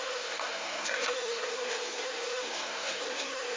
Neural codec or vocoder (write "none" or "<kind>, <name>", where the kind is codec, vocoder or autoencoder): codec, SNAC